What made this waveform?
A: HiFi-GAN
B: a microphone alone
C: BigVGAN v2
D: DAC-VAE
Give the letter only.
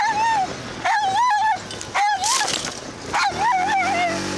B